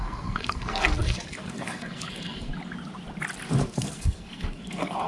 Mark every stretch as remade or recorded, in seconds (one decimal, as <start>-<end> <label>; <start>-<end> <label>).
0.0-2.5 remade; 2.5-3.6 recorded; 3.6-5.1 remade